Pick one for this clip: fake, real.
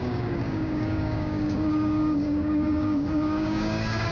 fake